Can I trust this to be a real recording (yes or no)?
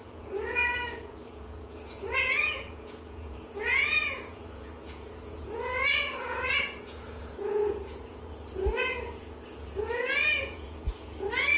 no